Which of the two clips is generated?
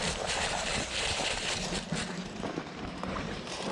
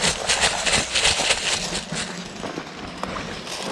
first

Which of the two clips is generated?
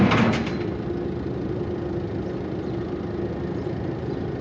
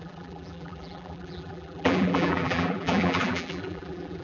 second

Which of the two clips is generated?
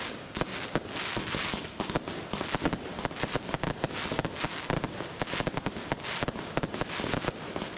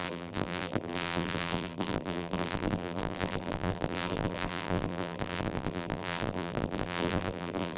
second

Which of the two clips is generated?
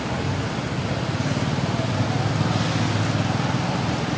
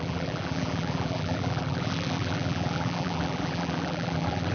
second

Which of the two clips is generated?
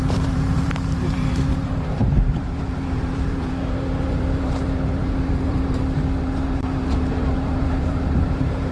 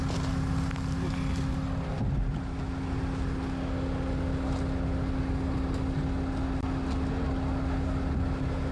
first